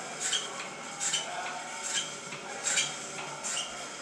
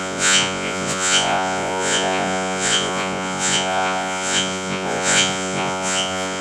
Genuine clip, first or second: first